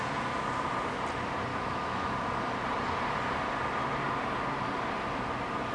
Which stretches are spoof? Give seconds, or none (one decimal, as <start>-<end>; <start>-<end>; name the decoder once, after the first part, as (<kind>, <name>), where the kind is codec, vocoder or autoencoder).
1.5-2.1 (autoencoder, DAC-VAE)